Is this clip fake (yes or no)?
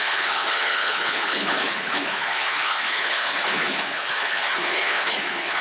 yes